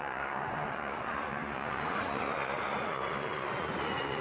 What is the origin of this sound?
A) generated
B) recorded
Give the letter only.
A